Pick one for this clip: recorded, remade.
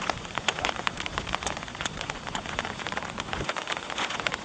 remade